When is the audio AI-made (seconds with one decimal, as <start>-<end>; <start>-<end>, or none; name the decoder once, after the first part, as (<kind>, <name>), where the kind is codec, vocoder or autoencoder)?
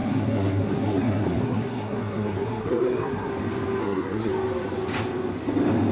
0.0-3.3 (codec, SNAC); 3.8-4.3